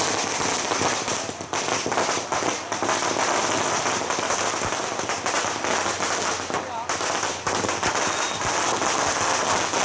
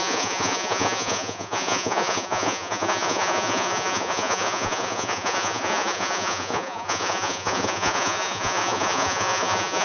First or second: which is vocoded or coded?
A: second